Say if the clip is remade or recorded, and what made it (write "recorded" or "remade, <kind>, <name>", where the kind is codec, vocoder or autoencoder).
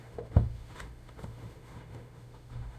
remade, autoencoder, DAC-VAE